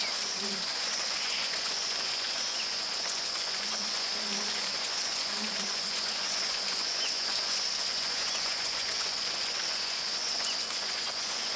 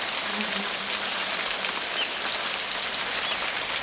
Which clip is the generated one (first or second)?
first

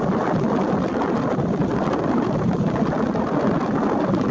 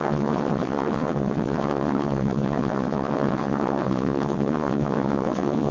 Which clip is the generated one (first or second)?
second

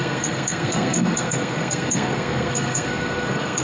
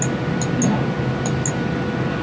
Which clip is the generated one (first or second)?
first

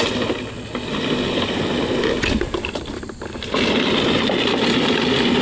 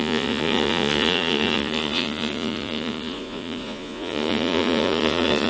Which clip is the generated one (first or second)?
second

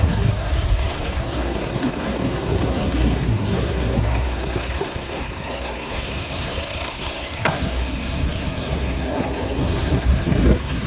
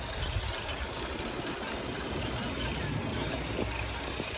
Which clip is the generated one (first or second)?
first